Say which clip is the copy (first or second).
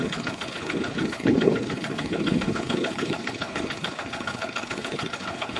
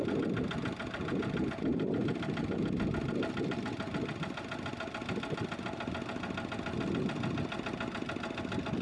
first